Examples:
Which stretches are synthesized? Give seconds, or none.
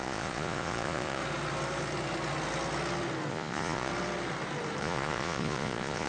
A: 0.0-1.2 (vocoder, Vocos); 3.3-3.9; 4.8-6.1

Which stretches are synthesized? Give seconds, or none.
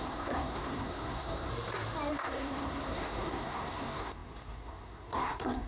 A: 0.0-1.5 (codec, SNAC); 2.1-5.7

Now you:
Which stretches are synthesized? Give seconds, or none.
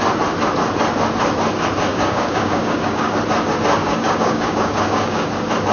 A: 1.9-3.1 (codec, DAC); 3.8-5.3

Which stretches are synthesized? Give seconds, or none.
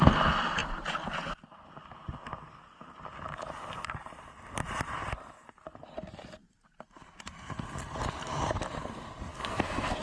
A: 9.3-10.0 (codec, SNAC)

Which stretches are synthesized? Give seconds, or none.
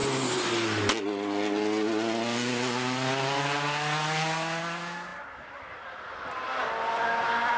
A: none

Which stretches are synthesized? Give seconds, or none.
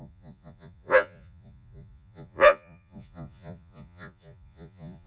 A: 0.0-5.1 (vocoder, Vocos)